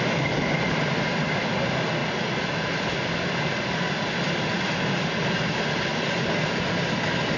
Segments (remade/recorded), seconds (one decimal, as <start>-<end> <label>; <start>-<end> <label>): 0.0-7.4 recorded

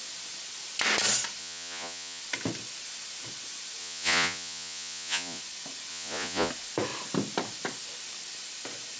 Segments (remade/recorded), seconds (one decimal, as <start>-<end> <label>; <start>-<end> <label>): 0.0-1.4 recorded; 1.4-2.2 remade; 2.2-3.8 recorded; 3.8-5.4 remade; 5.4-5.9 recorded; 5.9-6.5 remade; 6.5-9.0 recorded

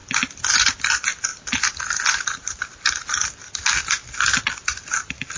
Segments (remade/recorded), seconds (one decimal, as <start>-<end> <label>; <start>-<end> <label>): 0.0-0.8 remade; 0.8-5.4 recorded

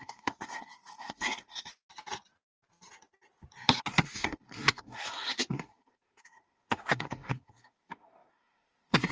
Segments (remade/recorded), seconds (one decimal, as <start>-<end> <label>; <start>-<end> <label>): 0.0-1.7 remade; 1.7-3.8 recorded; 3.8-9.1 remade